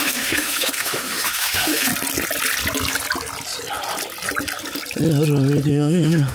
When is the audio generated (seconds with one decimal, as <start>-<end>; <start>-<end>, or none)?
0.0-1.9; 5.7-6.3